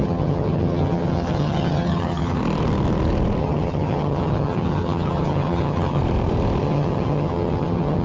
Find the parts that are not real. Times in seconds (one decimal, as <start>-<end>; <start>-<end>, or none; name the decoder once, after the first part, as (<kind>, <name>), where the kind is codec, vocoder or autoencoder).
0.0-2.4 (vocoder, HiFi-GAN); 3.4-6.0; 6.6-8.0